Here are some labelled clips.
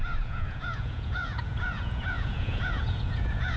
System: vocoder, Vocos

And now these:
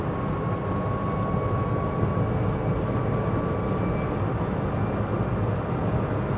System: none